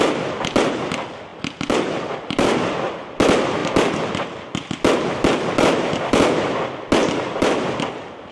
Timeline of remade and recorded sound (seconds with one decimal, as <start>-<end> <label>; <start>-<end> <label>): 0.0-1.3 recorded; 1.3-2.5 remade; 2.5-7.0 recorded; 7.0-7.6 remade; 7.6-8.3 recorded